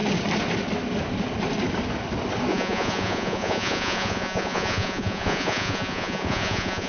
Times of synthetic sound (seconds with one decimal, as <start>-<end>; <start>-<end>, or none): 2.5-6.9